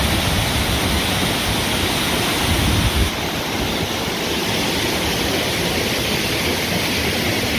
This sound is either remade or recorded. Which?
recorded